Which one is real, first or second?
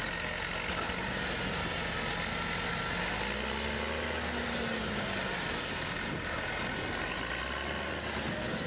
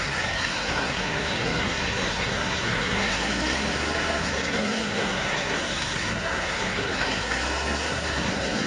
first